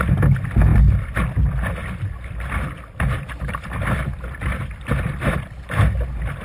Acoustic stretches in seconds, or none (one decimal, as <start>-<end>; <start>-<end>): 0.0-1.8; 5.6-6.4

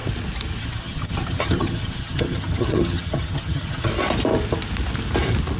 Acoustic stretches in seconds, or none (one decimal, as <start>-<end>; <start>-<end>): 0.0-0.6; 3.9-5.6

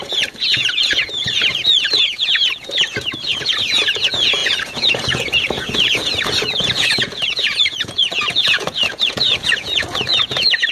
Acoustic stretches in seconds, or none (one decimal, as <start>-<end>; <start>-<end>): none

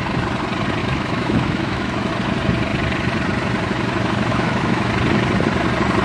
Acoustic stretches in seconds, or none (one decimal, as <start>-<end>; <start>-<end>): 0.0-0.8; 2.1-4.3; 4.9-6.0

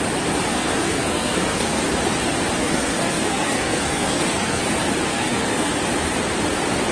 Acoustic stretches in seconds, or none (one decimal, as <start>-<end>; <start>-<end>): 0.0-0.5; 1.8-2.6; 4.6-5.1; 5.7-6.9

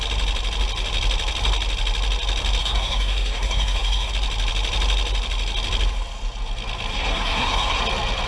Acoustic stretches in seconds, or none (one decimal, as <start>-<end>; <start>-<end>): 0.0-2.6; 4.1-6.9; 7.8-8.3

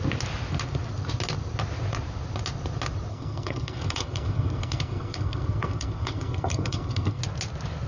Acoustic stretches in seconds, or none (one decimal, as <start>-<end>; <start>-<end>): 0.0-3.1; 7.2-7.9

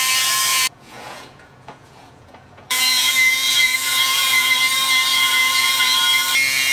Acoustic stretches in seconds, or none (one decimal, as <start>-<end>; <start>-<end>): 0.0-0.5; 4.5-5.1; 5.8-6.7